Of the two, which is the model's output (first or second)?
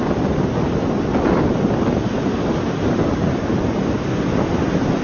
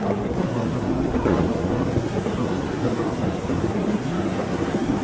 second